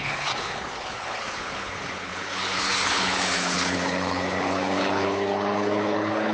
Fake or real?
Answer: fake